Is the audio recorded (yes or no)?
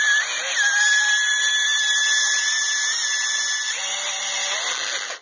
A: yes